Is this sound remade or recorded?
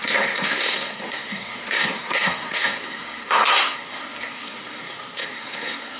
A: remade